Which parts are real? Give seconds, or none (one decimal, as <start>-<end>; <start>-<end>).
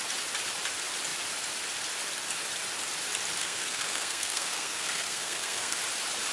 0.0-3.4; 5.8-6.3